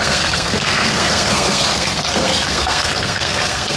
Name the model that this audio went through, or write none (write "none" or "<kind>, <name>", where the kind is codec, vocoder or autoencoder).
codec, SNAC